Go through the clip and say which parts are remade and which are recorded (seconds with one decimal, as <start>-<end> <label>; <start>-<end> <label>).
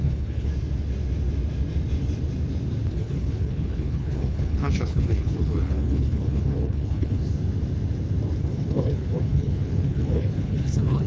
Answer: 0.0-0.5 remade; 0.5-2.9 recorded; 2.9-7.2 remade; 7.2-8.4 recorded; 8.4-11.1 remade